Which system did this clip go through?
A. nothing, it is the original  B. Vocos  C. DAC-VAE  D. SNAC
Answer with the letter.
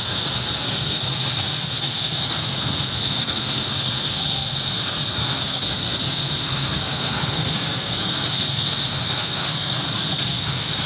D